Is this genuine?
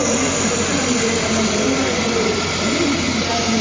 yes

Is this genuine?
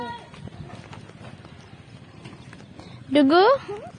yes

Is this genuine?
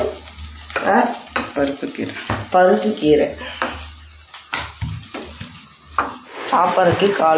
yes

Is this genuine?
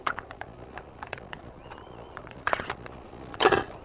no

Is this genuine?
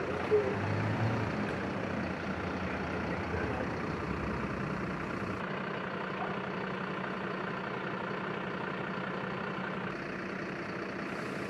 yes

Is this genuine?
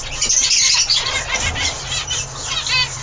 yes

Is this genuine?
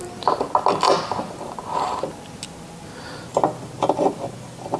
yes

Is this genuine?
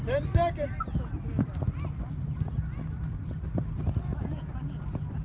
yes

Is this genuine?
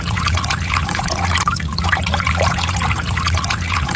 no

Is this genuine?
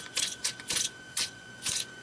no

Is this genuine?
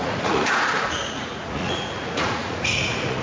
no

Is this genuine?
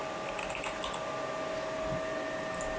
yes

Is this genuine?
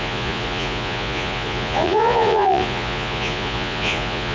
no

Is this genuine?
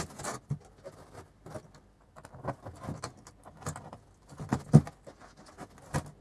yes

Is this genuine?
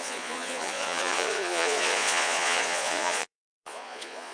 no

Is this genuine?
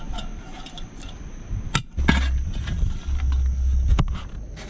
yes